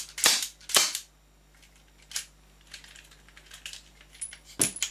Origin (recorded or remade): recorded